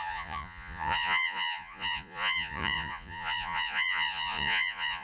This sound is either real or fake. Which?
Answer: fake